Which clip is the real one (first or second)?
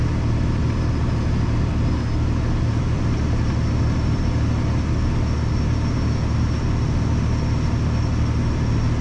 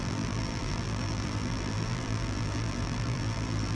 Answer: first